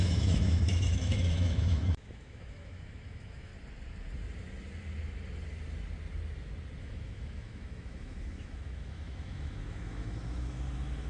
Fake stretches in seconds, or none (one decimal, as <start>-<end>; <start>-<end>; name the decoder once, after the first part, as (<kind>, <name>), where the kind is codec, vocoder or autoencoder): 0.0-3.5 (autoencoder, DAC-VAE); 6.8-11.1